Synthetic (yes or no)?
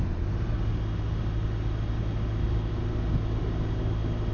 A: no